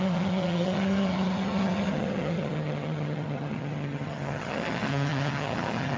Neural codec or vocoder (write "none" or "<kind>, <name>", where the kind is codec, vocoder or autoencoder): vocoder, HiFi-GAN